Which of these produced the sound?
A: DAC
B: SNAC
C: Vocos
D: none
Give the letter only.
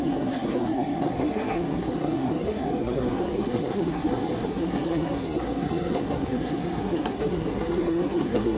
B